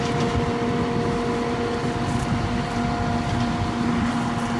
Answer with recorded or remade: recorded